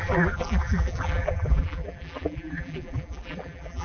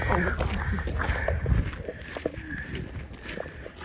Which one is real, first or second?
second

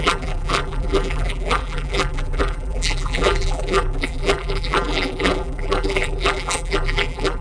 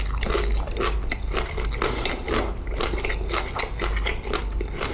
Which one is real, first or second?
second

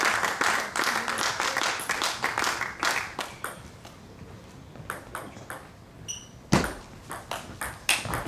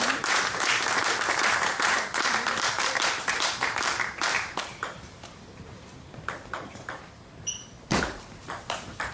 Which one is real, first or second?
first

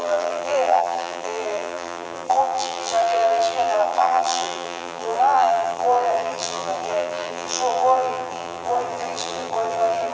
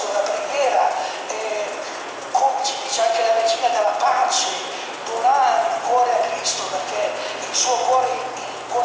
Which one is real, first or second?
second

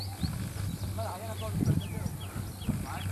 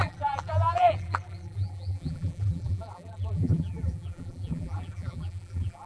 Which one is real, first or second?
first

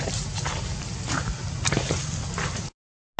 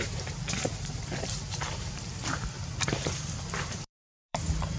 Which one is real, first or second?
first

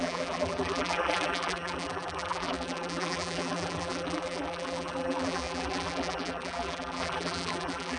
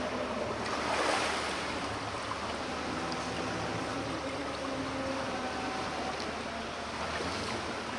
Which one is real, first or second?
second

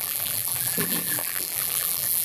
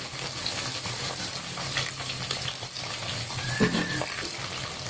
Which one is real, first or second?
second